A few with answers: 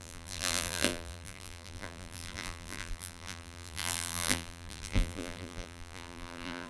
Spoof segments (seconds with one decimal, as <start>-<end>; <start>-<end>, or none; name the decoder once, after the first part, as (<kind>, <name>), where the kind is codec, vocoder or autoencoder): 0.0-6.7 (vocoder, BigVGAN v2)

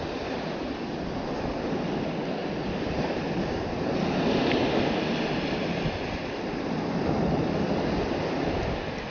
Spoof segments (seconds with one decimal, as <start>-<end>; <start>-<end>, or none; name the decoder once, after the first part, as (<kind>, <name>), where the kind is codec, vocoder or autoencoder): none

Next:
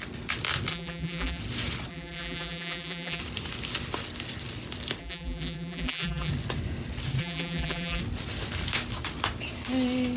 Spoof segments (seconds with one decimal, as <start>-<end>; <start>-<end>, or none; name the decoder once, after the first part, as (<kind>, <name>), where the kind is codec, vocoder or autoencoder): 0.7-1.4 (vocoder, BigVGAN v2); 1.9-3.2; 5.0-6.3; 7.2-8.0

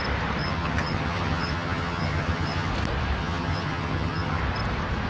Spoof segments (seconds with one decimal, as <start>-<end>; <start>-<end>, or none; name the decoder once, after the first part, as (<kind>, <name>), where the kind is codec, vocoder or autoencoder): 0.4-2.7 (vocoder, HiFi-GAN); 3.2-4.4

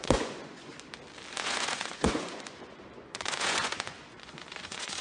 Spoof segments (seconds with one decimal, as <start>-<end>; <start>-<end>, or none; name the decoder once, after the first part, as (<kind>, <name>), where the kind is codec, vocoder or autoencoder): 0.0-0.7 (vocoder, Vocos); 1.3-5.0